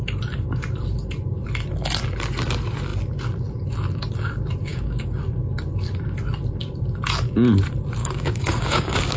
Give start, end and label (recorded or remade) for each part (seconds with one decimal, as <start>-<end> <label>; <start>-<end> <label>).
0.0-4.7 recorded; 4.7-5.2 remade; 5.2-8.0 recorded; 8.0-9.2 remade